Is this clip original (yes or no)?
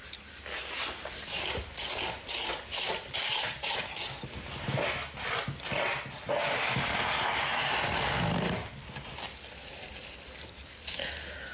yes